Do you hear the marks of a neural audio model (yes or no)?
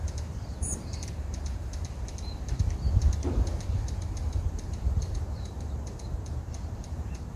yes